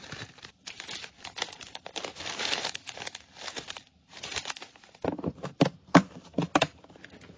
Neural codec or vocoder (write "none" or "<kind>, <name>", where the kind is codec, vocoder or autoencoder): vocoder, BigVGAN v2